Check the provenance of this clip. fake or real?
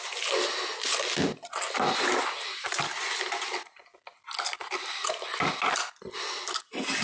real